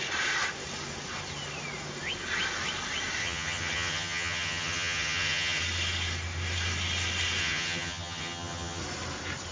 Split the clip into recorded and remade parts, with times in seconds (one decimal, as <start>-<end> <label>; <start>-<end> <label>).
0.0-3.2 recorded; 3.2-5.6 remade; 5.6-7.4 recorded; 7.4-8.8 remade; 8.8-9.5 recorded